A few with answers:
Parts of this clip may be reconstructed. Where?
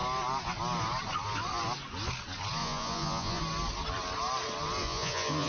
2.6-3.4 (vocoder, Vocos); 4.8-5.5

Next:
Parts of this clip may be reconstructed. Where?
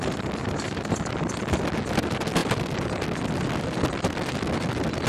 0.4-1.1 (vocoder, BigVGAN v2)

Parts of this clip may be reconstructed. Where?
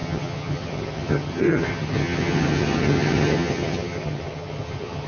0.0-5.1 (vocoder, HiFi-GAN)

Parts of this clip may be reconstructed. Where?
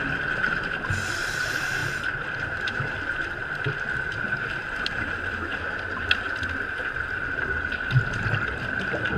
1.8-4.2 (vocoder, BigVGAN v2)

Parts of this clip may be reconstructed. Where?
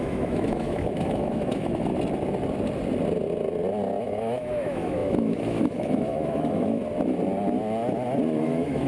0.0-1.9 (autoencoder, DAC-VAE); 4.0-6.8; 8.4-8.9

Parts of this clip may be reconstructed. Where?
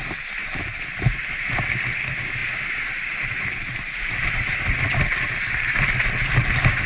none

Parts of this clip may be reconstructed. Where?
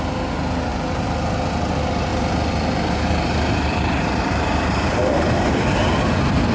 0.7-1.7 (vocoder, BigVGAN v2); 2.1-6.0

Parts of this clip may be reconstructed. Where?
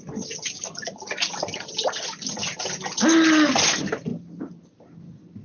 none